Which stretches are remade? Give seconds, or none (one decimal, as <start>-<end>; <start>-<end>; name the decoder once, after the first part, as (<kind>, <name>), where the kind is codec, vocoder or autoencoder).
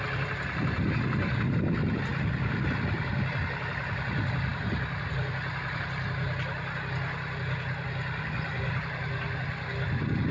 none